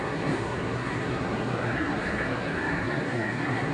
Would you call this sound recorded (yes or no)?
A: no